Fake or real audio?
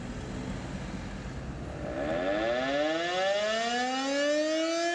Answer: real